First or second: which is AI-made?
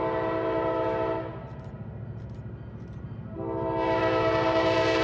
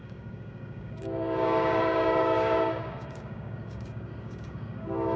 second